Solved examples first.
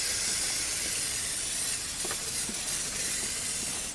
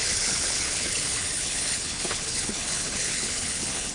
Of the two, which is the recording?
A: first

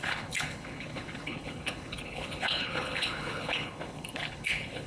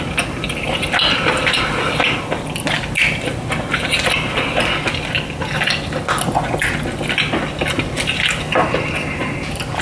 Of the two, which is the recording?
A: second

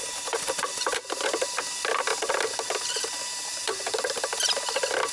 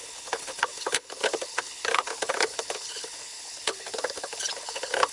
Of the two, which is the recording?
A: first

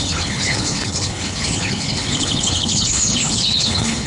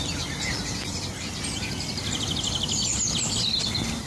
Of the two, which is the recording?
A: second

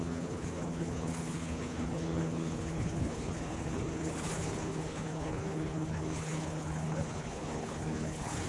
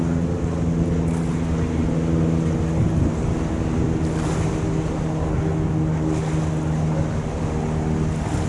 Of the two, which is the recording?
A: second